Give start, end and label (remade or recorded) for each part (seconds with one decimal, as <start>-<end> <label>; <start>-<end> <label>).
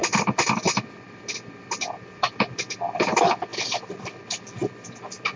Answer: 0.0-2.2 recorded; 2.2-3.5 remade; 3.5-4.0 recorded; 4.0-4.6 remade; 4.6-5.4 recorded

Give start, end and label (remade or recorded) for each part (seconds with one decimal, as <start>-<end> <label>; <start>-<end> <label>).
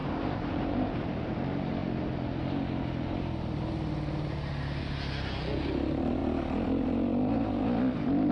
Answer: 0.0-1.0 remade; 1.0-8.3 recorded